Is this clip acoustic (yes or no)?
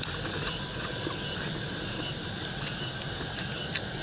yes